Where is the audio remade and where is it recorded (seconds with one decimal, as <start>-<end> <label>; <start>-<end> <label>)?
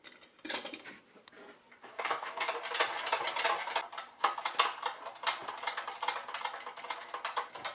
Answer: 0.0-1.8 recorded; 1.8-2.5 remade; 2.5-7.7 recorded